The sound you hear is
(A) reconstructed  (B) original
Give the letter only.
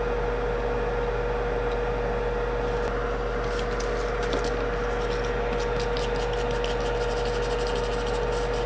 B